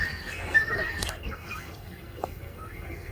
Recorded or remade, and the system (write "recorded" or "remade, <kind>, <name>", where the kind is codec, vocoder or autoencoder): remade, codec, SNAC